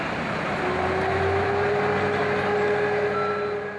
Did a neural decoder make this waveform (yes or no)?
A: no